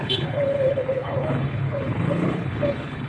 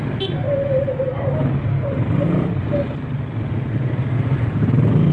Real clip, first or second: second